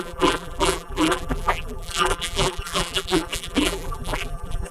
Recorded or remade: remade